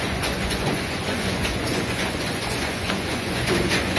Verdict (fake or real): fake